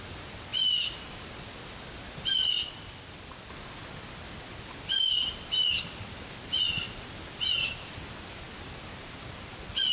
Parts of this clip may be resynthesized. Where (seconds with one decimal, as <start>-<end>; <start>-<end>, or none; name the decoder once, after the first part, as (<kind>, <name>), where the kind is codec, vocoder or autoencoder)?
none